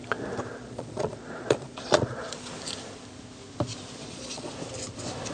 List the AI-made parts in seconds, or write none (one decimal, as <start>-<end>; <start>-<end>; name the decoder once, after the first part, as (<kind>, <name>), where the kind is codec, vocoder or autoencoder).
0.6-2.5 (vocoder, Vocos); 4.0-4.5